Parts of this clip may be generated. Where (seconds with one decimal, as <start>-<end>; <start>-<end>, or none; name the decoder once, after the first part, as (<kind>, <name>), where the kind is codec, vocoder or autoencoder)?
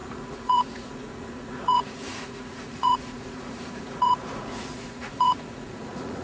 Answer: 0.0-6.2 (vocoder, Vocos)